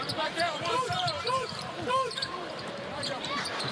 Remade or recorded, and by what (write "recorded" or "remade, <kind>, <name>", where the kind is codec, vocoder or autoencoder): remade, vocoder, BigVGAN v2